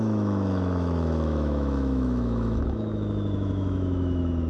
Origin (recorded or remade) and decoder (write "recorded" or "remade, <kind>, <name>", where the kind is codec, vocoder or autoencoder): remade, autoencoder, DAC-VAE